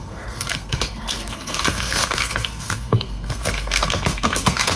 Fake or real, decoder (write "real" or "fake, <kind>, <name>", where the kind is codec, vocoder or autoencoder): fake, codec, SNAC